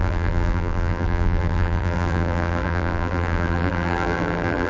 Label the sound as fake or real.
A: fake